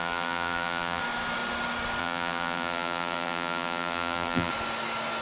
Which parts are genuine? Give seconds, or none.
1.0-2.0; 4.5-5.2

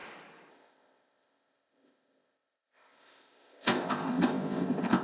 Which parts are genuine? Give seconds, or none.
0.0-0.5

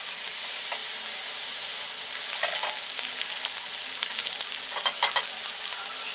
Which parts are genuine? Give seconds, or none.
0.0-6.1

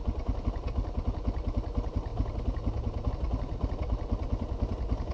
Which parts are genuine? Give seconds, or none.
0.0-5.1

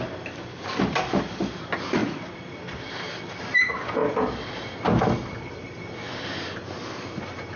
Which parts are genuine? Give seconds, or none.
0.0-7.6

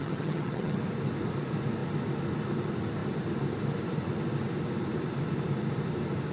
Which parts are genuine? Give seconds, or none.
0.8-6.3